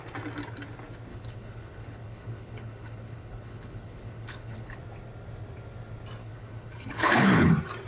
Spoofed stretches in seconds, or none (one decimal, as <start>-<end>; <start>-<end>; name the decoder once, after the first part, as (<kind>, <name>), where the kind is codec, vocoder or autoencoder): 1.1-4.8 (codec, HILCodec); 6.2-7.5